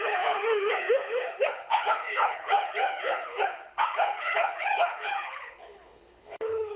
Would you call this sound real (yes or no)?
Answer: no